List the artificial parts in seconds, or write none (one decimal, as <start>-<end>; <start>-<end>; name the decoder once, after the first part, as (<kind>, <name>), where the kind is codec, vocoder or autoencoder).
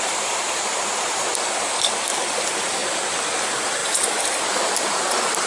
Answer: 0.0-1.3 (vocoder, BigVGAN v2); 2.3-2.8; 3.4-5.5